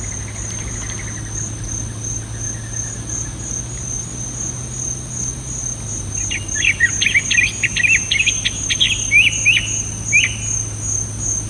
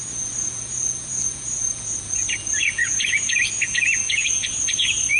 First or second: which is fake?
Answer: second